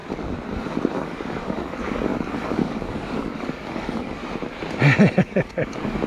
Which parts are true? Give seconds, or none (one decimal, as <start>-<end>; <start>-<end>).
0.0-0.9; 4.2-5.2